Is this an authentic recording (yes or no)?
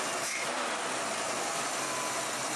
yes